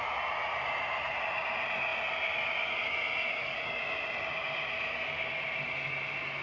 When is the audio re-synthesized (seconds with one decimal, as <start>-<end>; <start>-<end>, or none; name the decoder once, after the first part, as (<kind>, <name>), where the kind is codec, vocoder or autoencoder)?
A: 3.2-3.8 (codec, DAC)